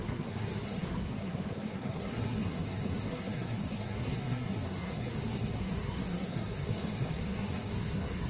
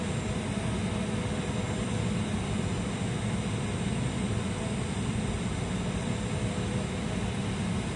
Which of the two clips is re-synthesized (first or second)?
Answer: first